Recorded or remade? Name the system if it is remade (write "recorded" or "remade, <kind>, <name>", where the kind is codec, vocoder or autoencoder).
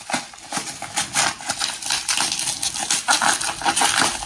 recorded